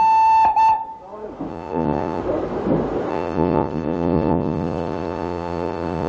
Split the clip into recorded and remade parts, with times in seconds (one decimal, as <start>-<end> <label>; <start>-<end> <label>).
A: 0.0-1.5 recorded; 1.5-2.2 remade; 2.2-3.1 recorded; 3.1-6.1 remade